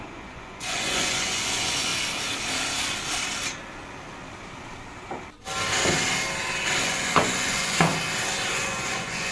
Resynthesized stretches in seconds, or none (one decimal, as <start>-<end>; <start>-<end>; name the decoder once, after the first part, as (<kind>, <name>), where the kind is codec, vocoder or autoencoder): 0.0-1.9 (vocoder, Vocos); 6.8-7.9; 8.5-9.3